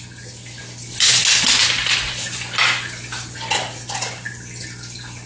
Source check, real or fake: real